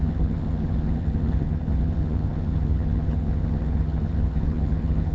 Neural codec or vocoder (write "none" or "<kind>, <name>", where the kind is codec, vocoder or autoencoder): vocoder, HiFi-GAN